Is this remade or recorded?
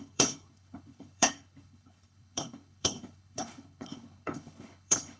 remade